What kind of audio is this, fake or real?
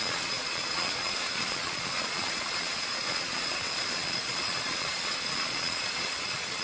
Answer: fake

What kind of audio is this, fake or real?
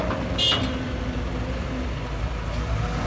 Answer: real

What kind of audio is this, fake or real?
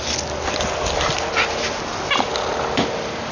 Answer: real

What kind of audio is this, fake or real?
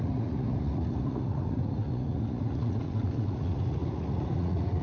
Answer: fake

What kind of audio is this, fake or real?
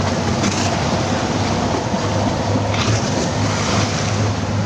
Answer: real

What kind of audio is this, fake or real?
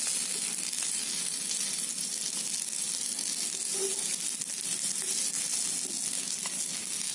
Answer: real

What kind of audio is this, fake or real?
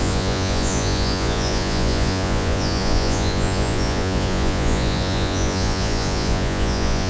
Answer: fake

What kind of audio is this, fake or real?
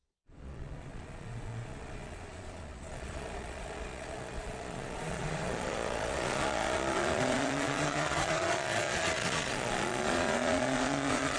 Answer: fake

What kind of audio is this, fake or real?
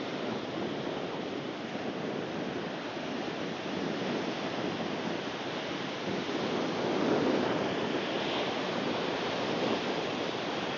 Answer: real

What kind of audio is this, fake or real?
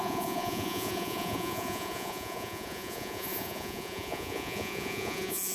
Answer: fake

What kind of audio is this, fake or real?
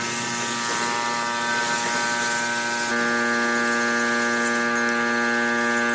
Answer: real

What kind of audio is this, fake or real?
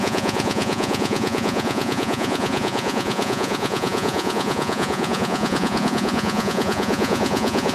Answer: fake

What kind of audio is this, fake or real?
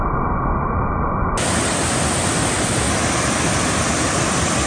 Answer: real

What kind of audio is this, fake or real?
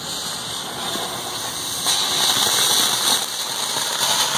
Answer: real